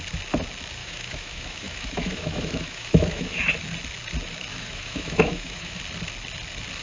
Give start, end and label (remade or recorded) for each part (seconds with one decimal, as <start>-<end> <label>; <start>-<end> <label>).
0.0-0.8 recorded; 0.8-3.4 remade; 3.4-4.5 recorded; 4.5-5.8 remade; 5.8-6.8 recorded